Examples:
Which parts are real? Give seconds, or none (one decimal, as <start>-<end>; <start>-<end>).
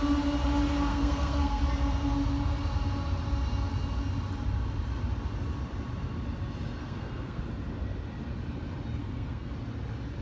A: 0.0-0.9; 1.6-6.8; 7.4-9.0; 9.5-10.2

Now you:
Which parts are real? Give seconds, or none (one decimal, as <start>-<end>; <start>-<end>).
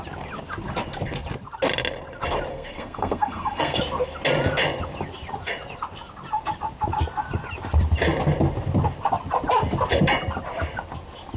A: 0.0-2.5; 3.8-11.4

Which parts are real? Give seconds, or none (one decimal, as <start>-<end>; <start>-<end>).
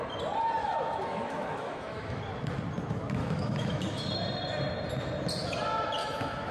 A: 0.0-0.6; 2.2-3.2; 4.1-6.0